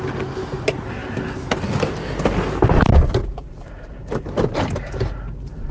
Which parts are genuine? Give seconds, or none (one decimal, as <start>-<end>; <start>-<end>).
0.0-3.2; 3.9-5.7